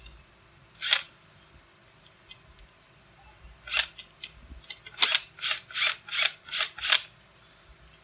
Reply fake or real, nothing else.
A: real